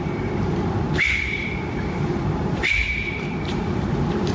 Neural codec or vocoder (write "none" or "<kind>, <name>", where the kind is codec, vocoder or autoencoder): vocoder, BigVGAN v2